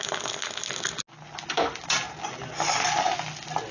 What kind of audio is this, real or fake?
real